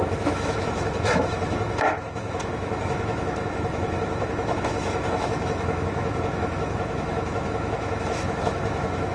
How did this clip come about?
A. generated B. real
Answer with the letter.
A